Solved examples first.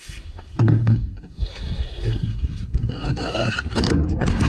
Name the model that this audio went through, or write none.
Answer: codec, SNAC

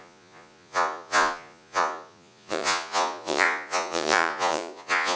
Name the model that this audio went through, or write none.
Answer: vocoder, Vocos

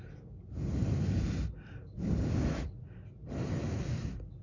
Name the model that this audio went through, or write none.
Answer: none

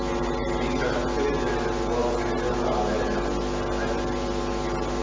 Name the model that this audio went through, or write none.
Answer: none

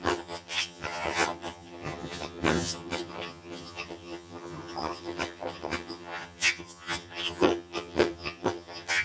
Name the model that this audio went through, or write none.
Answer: vocoder, HiFi-GAN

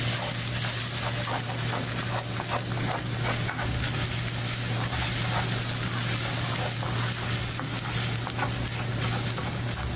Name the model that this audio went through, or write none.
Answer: none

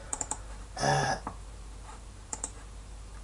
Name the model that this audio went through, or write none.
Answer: vocoder, BigVGAN v2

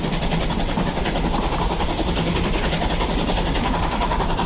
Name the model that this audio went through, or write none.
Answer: none